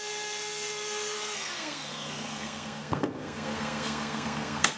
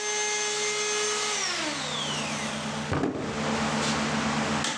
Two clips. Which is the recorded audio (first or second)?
second